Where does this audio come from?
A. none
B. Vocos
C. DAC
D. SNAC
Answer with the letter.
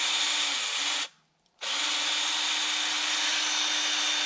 A